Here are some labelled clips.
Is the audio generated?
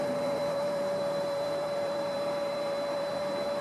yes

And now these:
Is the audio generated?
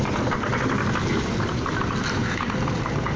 no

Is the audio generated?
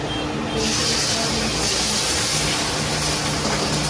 no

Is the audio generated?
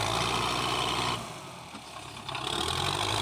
yes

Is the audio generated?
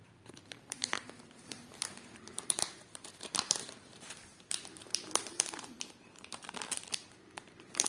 yes